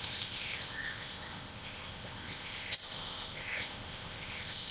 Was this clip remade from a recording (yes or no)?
yes